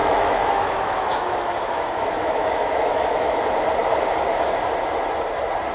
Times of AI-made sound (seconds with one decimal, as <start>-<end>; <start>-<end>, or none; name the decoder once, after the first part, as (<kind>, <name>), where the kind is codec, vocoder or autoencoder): 0.0-3.4 (autoencoder, DAC-VAE)